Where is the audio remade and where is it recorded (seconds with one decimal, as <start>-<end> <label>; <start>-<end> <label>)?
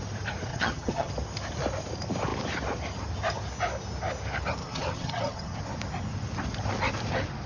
0.0-0.5 recorded; 0.5-1.1 remade; 1.1-4.6 recorded; 4.6-5.6 remade; 5.6-7.5 recorded